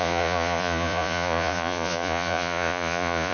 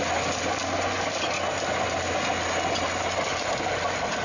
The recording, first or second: second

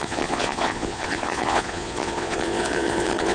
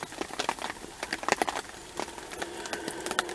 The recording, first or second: second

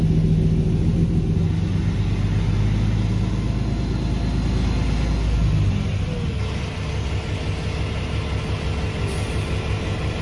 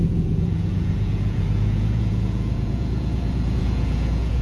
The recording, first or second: first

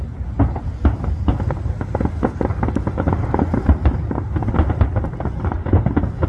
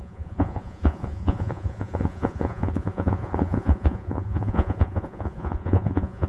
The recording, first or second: first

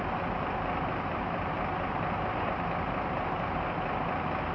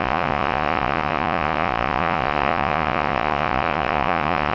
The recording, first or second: first